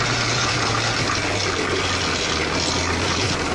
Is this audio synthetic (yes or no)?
no